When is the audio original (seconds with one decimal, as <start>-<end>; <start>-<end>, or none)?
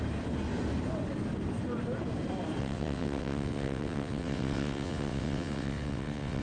0.0-2.6